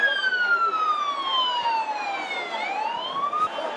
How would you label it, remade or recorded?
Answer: recorded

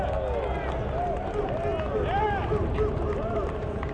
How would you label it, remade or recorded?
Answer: recorded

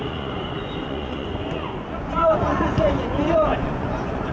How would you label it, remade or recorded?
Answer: remade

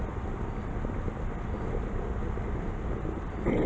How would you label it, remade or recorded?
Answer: recorded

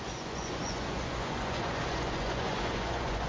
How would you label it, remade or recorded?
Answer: remade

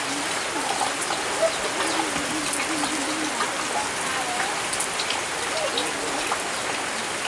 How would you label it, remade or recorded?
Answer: recorded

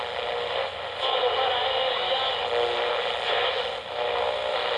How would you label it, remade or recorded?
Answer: recorded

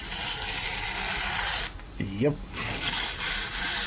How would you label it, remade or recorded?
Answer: recorded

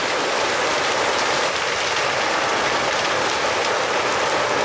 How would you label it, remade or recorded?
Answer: recorded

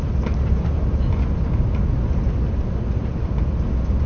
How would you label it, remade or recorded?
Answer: recorded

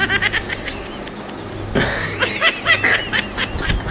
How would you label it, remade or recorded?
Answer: recorded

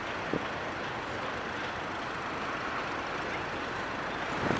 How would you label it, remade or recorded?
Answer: recorded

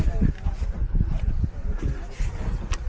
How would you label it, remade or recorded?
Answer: recorded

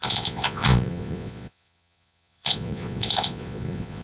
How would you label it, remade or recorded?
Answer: remade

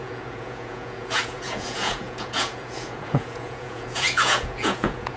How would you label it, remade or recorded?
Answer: remade